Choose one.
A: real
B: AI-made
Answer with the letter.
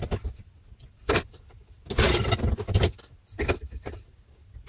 A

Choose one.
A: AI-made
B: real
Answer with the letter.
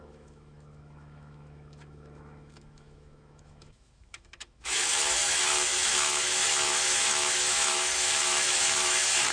A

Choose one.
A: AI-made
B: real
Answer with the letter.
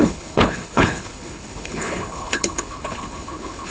A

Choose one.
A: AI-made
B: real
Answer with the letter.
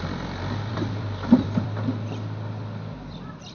A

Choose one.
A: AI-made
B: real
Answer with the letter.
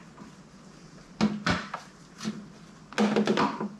B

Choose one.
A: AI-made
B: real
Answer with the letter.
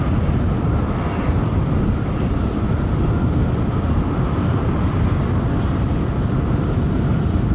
B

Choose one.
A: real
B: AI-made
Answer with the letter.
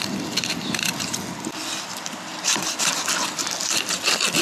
B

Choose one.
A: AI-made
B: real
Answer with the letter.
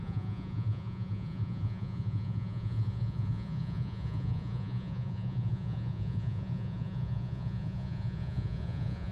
A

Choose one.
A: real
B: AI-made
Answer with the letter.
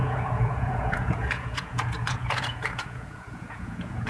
B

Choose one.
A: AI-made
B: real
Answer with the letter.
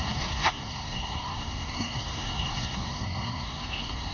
A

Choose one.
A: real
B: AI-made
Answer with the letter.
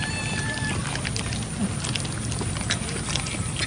A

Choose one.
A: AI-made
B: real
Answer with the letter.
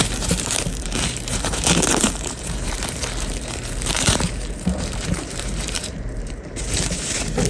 A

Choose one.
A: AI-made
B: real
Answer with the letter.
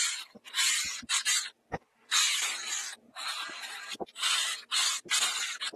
B